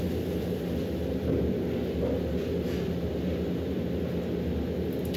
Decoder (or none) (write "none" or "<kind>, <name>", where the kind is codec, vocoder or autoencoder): none